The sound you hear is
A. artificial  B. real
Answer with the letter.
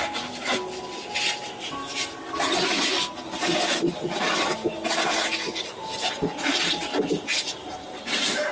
B